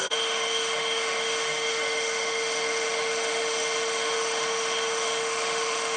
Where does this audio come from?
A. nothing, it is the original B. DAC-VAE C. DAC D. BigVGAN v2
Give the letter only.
B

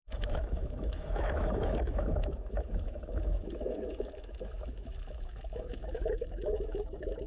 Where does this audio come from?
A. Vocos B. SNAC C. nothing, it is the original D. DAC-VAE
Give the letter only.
D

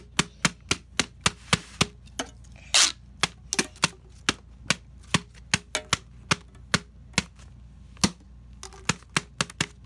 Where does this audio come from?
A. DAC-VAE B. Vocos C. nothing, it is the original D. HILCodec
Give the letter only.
C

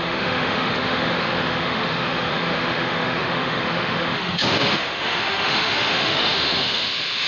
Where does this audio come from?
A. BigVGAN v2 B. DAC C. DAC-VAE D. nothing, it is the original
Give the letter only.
C